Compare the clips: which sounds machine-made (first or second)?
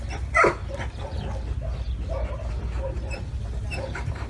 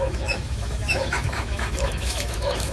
second